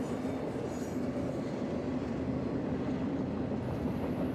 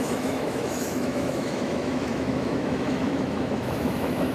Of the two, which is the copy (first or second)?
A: second